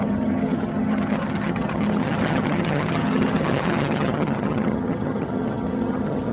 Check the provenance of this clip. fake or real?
fake